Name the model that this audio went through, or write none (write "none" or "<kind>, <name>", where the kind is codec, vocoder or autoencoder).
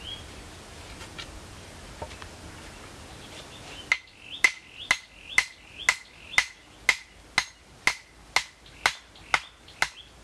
none